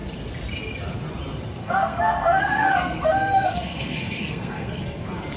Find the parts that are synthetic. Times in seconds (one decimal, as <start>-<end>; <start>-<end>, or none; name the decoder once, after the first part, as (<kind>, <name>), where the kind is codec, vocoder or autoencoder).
1.6-4.8 (codec, SNAC)